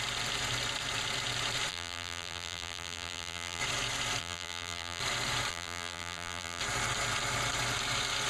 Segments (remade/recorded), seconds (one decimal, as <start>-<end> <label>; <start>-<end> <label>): 0.0-1.7 recorded; 1.7-3.6 remade; 3.6-4.2 recorded; 4.2-5.0 remade; 5.0-5.5 recorded; 5.5-6.6 remade; 6.6-8.3 recorded